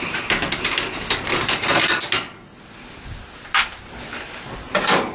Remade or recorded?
recorded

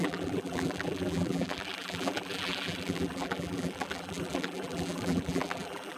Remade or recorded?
remade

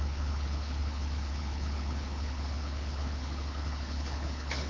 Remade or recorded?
remade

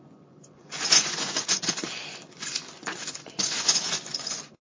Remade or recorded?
remade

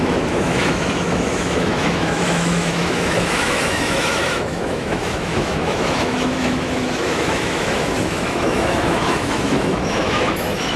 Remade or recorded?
remade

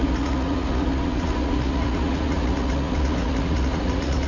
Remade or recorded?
remade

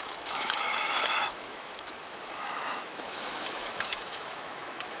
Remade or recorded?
remade